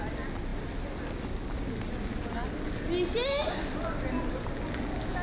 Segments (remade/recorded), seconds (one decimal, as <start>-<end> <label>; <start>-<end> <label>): 0.0-5.2 recorded